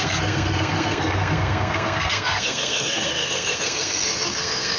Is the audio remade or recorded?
remade